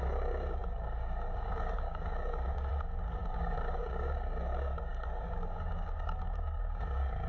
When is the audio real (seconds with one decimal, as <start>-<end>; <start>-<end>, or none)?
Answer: none

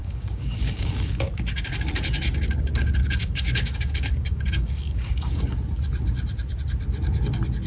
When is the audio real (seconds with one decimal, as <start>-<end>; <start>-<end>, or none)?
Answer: 1.3-3.0; 5.4-7.7

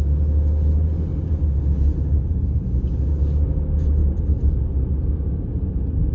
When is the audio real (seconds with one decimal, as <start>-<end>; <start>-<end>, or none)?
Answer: 0.0-6.1

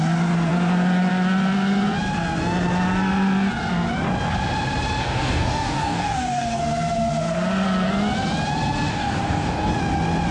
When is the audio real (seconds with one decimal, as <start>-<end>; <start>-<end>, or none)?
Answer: 0.0-5.0; 6.6-8.9; 9.7-10.3

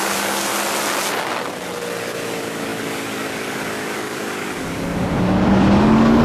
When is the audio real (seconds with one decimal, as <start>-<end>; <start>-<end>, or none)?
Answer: 0.5-2.0